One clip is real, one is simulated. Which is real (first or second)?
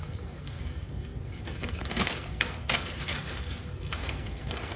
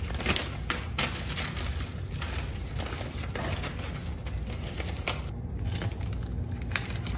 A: second